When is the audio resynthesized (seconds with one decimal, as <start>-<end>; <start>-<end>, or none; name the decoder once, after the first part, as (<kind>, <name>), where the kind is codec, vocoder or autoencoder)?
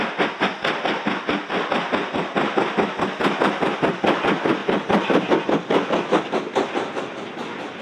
4.6-5.3 (vocoder, BigVGAN v2)